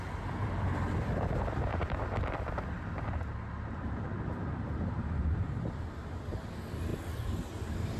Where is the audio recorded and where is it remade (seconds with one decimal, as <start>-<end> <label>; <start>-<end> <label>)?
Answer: 0.0-8.0 recorded